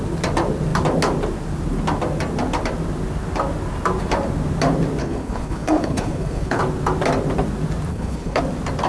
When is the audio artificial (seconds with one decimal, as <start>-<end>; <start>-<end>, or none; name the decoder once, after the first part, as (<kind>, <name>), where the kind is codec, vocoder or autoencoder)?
5.0-6.6 (codec, HILCodec); 7.9-8.4